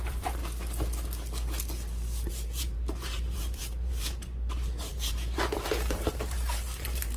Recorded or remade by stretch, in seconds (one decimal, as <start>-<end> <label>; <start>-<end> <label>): 0.0-0.4 remade; 0.4-2.3 recorded; 2.3-7.2 remade